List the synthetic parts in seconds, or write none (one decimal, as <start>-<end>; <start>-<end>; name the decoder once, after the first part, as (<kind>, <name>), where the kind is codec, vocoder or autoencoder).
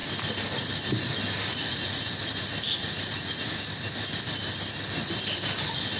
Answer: 1.5-2.0 (vocoder, Vocos); 2.8-3.5